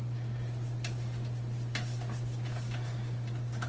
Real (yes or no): yes